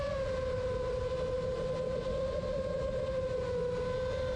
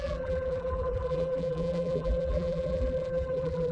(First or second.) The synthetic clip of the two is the second